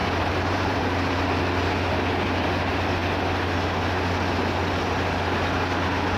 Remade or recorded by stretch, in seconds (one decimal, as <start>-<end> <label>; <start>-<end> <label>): 0.0-0.8 remade; 0.8-6.2 recorded